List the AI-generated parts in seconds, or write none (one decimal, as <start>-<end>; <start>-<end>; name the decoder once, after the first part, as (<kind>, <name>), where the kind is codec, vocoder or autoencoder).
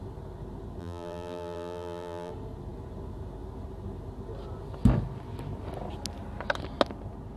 0.8-2.3 (vocoder, BigVGAN v2)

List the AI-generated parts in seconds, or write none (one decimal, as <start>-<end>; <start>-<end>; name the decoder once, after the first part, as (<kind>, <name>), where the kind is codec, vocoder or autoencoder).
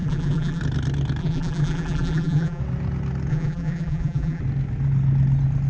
0.0-0.6 (vocoder, BigVGAN v2); 1.2-2.6; 3.3-4.4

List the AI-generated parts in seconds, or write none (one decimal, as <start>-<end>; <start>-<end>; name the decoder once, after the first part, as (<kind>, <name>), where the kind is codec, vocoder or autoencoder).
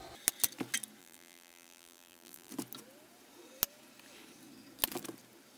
1.0-2.5 (vocoder, BigVGAN v2)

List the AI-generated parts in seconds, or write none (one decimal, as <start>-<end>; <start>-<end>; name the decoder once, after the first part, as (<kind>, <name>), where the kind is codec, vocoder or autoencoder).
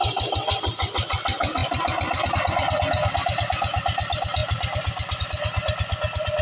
4.4-5.2 (vocoder, BigVGAN v2)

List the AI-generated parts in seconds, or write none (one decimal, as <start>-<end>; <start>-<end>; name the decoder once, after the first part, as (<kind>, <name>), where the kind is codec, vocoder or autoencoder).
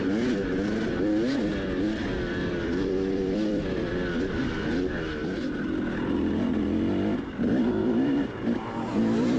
2.5-4.4 (vocoder, BigVGAN v2); 7.8-8.3